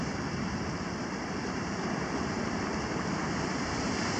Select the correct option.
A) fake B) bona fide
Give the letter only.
B